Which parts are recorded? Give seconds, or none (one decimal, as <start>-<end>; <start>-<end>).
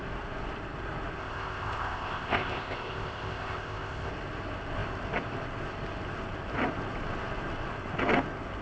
0.0-1.2; 4.1-8.6